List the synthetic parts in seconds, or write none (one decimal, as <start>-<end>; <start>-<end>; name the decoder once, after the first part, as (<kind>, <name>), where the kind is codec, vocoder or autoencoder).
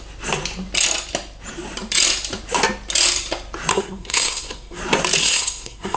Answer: 3.7-4.8 (codec, SNAC); 5.2-6.0